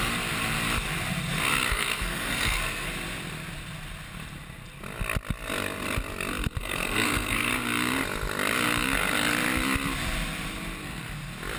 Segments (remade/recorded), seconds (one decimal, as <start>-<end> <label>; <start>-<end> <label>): 0.0-1.7 recorded; 1.7-2.9 remade; 2.9-6.6 recorded; 6.6-7.5 remade; 7.5-11.6 recorded